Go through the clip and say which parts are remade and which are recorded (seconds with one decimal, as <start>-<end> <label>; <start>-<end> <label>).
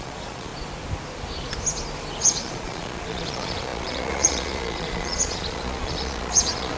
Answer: 0.0-0.5 remade; 0.5-2.2 recorded; 2.2-6.8 remade